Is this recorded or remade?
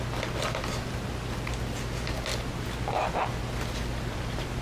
recorded